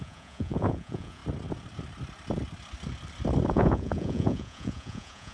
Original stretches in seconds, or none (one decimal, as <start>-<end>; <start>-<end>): 1.2-3.5